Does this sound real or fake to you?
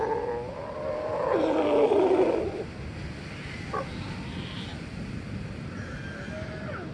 real